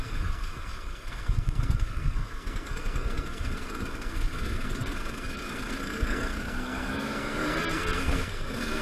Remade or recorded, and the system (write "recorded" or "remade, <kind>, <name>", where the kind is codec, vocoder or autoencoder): remade, codec, SNAC